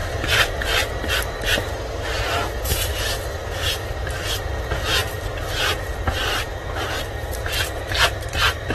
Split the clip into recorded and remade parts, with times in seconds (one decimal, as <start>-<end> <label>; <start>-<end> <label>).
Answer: 0.0-0.6 remade; 0.6-3.4 recorded; 3.4-4.2 remade; 4.2-5.0 recorded; 5.0-8.7 remade